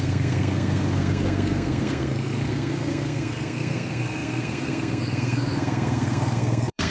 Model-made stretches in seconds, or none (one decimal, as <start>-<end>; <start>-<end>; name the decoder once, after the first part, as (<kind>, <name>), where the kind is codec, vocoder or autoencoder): 0.0-6.9 (codec, SNAC)